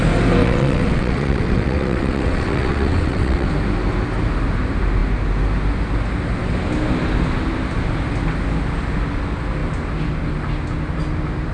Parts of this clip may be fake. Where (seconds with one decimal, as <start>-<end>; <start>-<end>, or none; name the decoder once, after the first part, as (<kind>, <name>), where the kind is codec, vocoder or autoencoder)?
0.4-3.5 (vocoder, WaveNeXt)